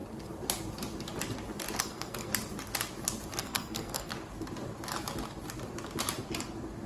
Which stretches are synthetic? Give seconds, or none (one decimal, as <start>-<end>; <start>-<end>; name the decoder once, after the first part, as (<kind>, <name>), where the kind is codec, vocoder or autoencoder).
1.8-2.3 (codec, SNAC); 3.4-4.1